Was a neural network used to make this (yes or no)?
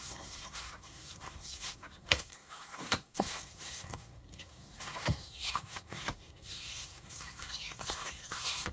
yes